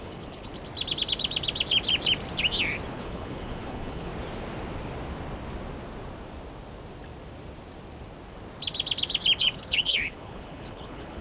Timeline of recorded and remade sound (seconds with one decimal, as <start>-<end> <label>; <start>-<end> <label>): 0.0-0.5 remade; 0.5-2.9 recorded; 2.9-4.1 remade; 4.1-9.4 recorded; 9.4-11.2 remade

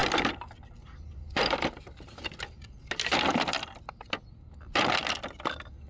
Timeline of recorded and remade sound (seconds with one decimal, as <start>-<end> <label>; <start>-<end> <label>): 0.0-2.3 remade; 2.3-5.9 recorded